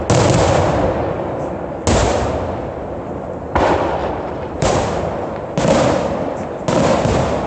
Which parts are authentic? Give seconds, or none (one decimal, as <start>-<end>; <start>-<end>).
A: 0.0-2.0; 2.7-4.0; 5.0-7.5